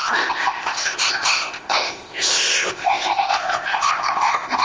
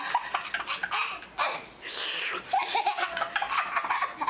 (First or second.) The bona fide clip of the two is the second